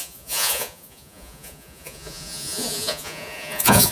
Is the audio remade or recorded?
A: remade